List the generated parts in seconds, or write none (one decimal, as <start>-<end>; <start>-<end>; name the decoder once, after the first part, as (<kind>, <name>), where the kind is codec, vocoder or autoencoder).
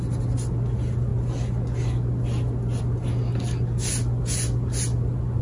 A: none